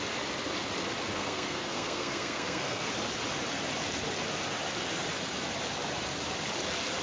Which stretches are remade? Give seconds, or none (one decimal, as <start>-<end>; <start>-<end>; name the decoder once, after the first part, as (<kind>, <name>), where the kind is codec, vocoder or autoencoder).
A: 1.1-2.9 (codec, SNAC)